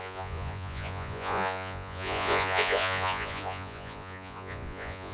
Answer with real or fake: fake